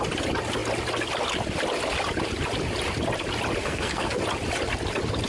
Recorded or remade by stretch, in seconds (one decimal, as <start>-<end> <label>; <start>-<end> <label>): 0.0-3.6 recorded; 3.6-4.2 remade; 4.2-5.3 recorded